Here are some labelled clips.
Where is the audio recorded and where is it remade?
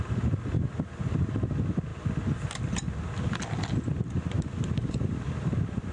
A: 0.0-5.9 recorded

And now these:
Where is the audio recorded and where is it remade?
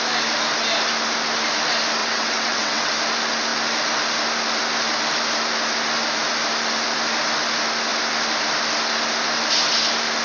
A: 0.0-2.0 recorded; 2.0-2.9 remade; 2.9-10.2 recorded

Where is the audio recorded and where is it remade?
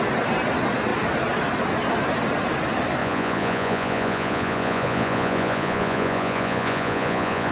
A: 0.0-3.0 recorded; 3.0-7.5 remade